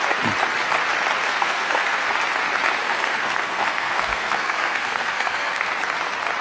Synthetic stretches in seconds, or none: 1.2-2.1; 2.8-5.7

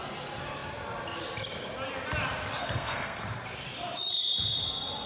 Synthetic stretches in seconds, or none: 2.6-3.2

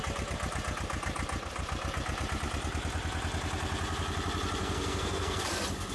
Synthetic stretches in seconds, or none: 4.6-5.4

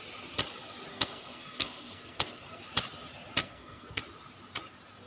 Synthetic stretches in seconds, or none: 0.9-2.6; 3.4-4.0

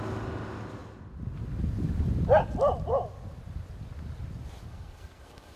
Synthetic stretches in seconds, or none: 4.7-5.6

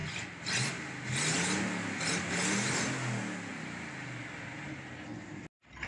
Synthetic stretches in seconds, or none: none

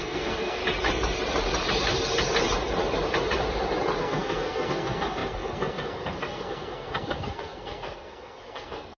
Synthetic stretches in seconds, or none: 0.0-0.6; 4.0-9.0

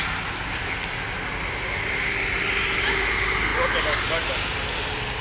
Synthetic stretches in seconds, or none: none